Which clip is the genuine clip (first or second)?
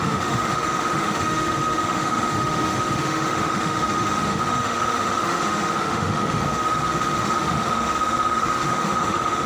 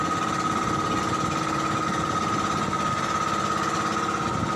second